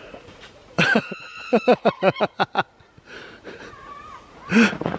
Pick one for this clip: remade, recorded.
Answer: remade